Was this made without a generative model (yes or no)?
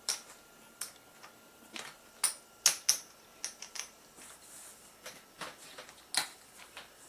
yes